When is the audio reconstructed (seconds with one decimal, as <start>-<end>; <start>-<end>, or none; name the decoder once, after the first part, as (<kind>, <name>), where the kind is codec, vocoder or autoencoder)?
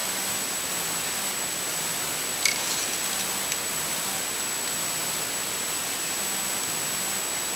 0.0-4.4 (vocoder, BigVGAN v2); 5.0-6.2